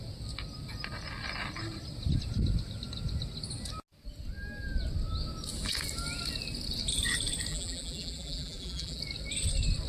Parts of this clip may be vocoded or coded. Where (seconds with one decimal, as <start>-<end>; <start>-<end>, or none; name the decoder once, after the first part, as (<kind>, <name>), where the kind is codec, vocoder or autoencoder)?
7.5-9.0 (vocoder, BigVGAN v2)